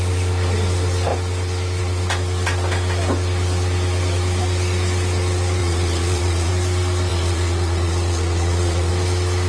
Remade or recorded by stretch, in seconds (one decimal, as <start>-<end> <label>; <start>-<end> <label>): 0.0-5.6 recorded; 5.6-6.5 remade; 6.5-7.1 recorded; 7.1-8.9 remade; 8.9-9.5 recorded